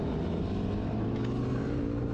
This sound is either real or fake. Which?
real